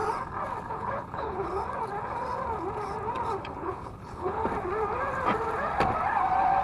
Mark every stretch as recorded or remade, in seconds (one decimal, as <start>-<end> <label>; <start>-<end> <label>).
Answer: 0.0-0.7 recorded; 0.7-1.6 remade; 1.6-3.4 recorded; 3.4-4.4 remade; 4.4-6.6 recorded